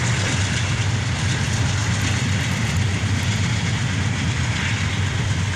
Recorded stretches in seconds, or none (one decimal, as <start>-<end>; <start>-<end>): none